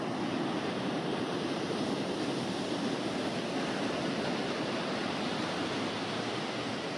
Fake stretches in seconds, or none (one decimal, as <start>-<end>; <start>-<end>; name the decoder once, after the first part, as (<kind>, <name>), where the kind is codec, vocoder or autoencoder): 1.1-3.3 (vocoder, BigVGAN v2); 5.0-7.0

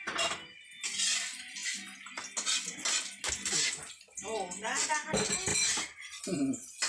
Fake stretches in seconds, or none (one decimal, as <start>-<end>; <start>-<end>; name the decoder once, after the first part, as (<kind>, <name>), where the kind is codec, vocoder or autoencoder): none

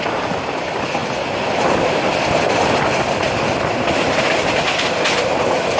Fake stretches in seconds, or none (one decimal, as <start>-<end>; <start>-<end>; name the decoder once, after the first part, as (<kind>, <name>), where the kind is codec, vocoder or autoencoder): none

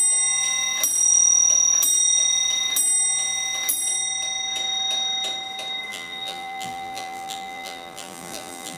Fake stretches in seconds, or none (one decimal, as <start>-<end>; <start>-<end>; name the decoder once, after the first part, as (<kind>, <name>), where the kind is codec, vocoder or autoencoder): 5.9-8.8 (vocoder, BigVGAN v2)

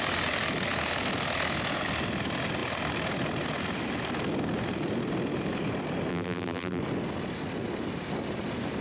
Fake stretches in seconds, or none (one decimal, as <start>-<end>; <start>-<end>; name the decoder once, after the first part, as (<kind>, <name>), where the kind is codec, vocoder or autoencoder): 6.1-6.8 (vocoder, BigVGAN v2)

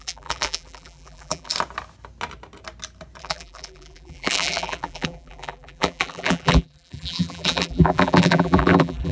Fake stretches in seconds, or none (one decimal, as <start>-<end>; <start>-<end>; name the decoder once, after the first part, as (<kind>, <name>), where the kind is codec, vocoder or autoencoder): 0.0-1.5 (vocoder, BigVGAN v2); 3.2-9.1

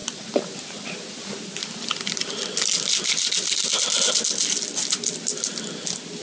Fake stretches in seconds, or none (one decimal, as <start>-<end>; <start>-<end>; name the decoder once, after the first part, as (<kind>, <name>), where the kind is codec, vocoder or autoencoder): none

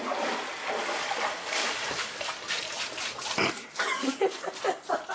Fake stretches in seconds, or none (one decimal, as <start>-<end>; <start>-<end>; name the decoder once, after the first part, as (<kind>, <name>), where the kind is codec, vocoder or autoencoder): 1.6-2.6 (vocoder, BigVGAN v2)